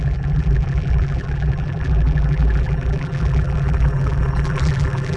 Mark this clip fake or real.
fake